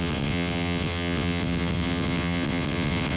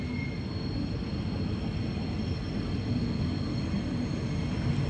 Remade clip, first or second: first